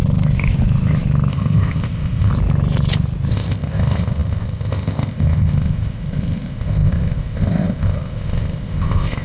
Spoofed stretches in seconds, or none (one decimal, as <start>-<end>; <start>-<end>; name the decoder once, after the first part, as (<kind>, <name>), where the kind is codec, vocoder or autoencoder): 1.3-2.3 (codec, ZipCodec); 3.3-9.2